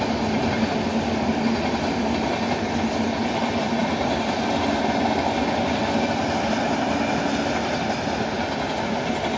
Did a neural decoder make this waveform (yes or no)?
no